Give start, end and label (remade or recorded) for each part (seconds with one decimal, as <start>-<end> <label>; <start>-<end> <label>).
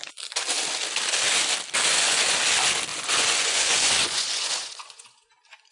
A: 0.0-1.9 recorded; 1.9-2.4 remade; 2.4-2.9 recorded; 2.9-5.3 remade; 5.3-5.7 recorded